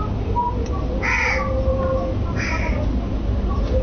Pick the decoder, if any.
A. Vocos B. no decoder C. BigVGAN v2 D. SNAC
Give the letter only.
B